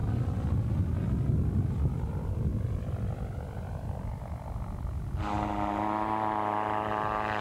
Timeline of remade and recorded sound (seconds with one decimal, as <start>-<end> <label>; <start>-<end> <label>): 0.0-7.4 recorded